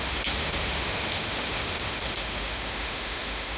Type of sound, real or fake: fake